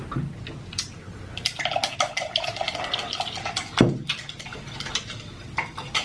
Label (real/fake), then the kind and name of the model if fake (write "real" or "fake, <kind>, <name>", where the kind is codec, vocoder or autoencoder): real